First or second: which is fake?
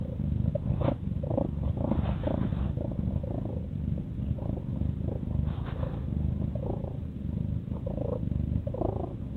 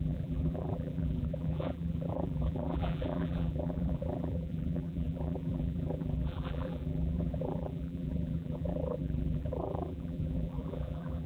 second